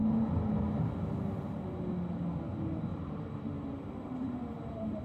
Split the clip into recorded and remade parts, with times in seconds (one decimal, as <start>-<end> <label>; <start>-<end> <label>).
0.0-0.6 remade; 0.6-2.9 recorded; 2.9-5.0 remade